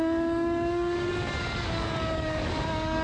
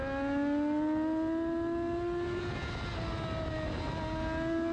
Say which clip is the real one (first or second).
second